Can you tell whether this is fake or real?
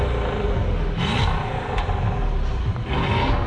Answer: real